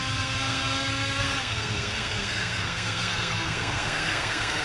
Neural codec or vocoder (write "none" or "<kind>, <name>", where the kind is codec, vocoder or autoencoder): codec, SNAC